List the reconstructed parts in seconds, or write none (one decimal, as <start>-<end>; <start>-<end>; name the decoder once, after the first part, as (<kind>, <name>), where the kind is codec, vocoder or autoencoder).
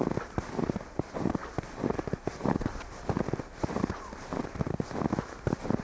none